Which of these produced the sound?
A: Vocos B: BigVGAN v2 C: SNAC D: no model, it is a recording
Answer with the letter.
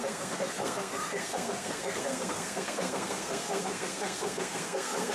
C